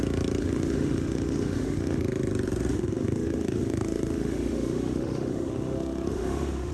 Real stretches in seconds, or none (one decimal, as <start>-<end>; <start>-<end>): 0.0-0.4; 2.0-2.7